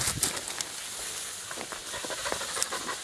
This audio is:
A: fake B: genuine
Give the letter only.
B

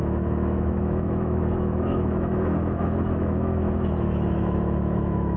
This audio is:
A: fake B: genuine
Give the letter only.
A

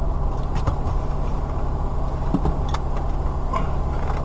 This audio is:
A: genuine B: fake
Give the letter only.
A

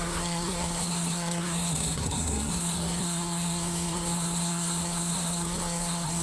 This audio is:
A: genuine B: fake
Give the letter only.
B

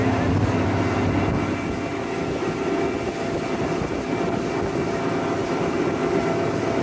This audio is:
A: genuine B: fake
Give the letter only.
A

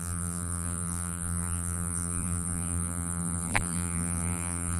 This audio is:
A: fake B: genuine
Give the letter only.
A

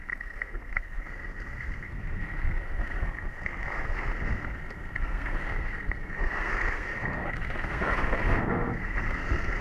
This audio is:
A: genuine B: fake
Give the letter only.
B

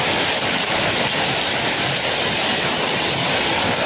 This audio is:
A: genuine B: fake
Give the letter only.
A